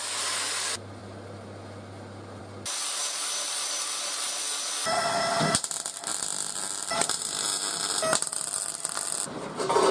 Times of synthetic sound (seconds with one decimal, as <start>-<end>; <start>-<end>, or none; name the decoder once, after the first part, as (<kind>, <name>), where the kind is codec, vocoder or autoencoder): none